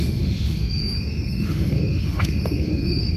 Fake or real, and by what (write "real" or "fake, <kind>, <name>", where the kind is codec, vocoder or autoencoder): fake, autoencoder, DAC-VAE